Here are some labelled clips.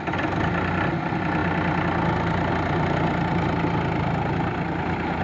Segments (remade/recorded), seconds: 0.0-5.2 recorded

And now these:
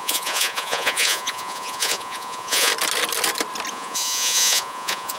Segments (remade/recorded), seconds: 0.0-2.7 remade; 2.7-3.7 recorded; 3.7-5.2 remade

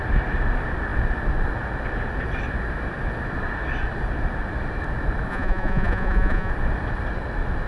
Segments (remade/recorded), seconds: 0.0-5.3 recorded; 5.3-6.5 remade; 6.5-7.7 recorded